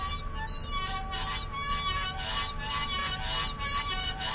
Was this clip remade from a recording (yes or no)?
no